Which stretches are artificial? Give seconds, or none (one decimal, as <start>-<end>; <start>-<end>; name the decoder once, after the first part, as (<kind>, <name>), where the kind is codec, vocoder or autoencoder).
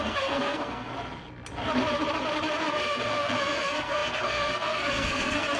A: 0.0-0.9 (codec, SNAC); 2.6-5.6